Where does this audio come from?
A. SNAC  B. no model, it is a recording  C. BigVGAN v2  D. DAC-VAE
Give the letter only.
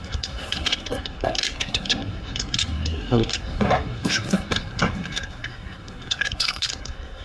A